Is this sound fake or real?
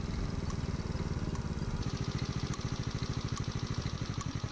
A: real